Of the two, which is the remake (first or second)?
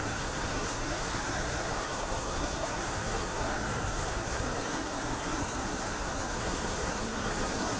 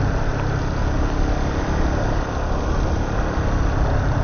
first